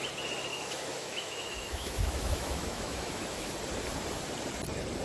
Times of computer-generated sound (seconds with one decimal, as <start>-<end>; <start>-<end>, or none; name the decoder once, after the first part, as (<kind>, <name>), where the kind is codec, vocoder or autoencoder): 0.5-3.5 (autoencoder, DAC-VAE)